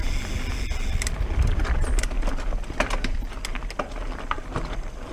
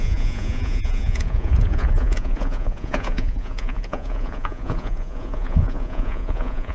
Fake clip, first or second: second